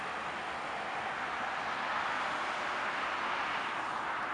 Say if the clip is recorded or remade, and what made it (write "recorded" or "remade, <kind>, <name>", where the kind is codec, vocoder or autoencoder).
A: recorded